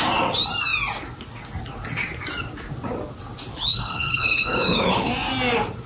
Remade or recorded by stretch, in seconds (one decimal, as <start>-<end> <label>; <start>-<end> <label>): 0.0-3.5 recorded; 3.5-5.1 remade; 5.1-5.9 recorded